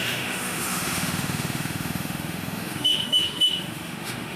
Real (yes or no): no